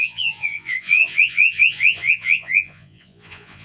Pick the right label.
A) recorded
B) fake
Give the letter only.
B